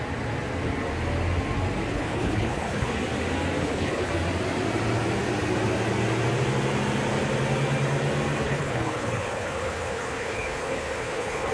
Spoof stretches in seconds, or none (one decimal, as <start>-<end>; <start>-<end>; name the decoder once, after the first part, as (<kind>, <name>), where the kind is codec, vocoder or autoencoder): 1.9-3.0 (codec, HILCodec); 3.6-4.1; 8.4-11.5